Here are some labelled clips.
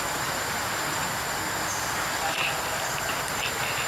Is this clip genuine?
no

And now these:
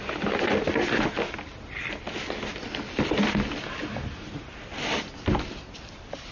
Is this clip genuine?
yes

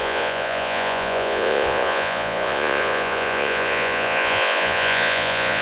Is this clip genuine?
no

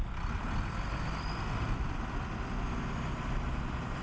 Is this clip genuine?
yes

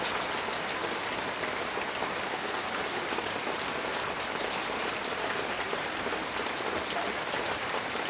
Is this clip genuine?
yes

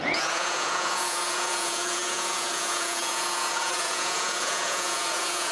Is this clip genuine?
no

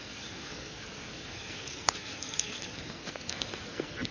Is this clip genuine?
no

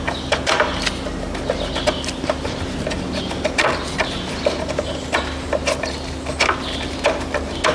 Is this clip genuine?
yes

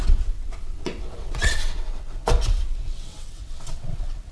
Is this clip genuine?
no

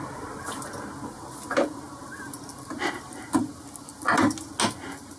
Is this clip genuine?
yes